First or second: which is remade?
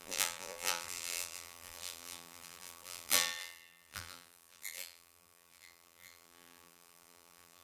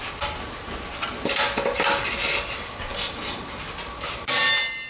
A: first